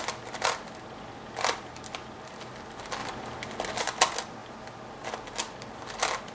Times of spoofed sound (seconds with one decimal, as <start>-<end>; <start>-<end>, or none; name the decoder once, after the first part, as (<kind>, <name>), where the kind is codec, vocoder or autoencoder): none